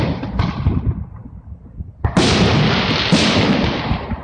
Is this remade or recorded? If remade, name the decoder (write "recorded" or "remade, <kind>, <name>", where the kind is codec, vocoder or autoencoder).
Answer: recorded